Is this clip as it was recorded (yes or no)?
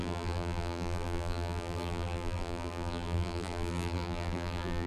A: no